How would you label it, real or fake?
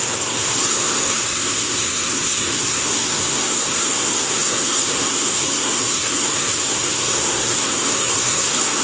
fake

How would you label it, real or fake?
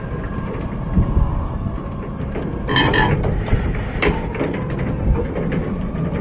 real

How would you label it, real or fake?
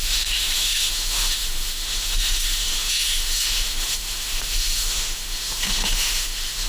fake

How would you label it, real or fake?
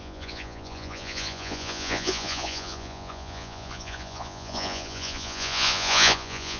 fake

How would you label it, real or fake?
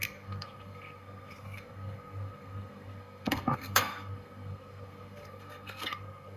fake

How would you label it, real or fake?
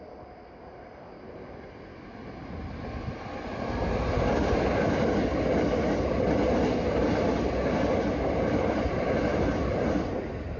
real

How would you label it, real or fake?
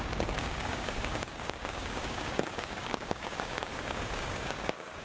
fake